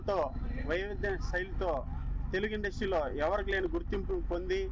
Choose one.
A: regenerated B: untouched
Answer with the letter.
B